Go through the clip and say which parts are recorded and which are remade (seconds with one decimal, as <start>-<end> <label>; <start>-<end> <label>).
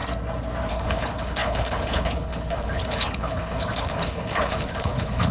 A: 0.0-0.7 recorded; 0.7-5.3 remade